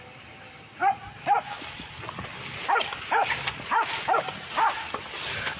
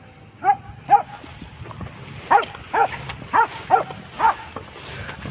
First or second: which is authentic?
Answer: second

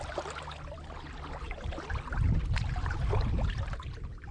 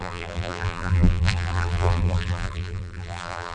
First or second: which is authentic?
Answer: first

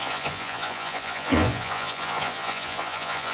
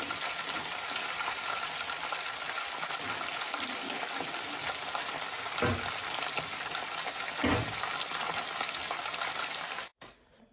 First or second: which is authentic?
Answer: second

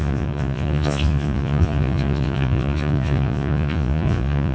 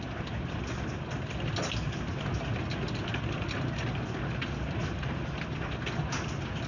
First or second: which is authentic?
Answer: second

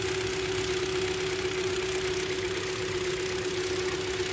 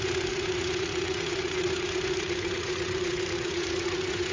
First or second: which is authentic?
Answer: first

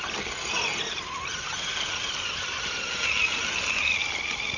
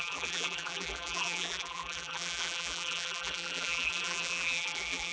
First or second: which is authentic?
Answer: first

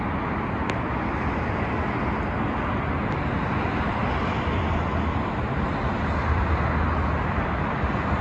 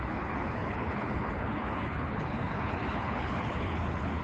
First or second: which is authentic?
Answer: first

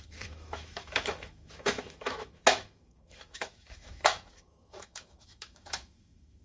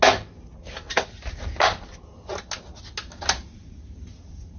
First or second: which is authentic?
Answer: second